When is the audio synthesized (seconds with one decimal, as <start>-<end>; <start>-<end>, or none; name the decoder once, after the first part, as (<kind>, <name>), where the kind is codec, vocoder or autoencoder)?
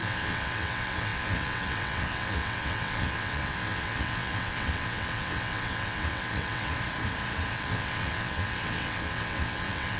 0.0-6.7 (vocoder, WaveNeXt); 7.5-10.0